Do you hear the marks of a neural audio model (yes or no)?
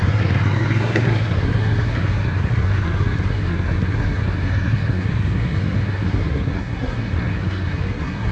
yes